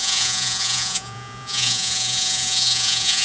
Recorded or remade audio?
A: remade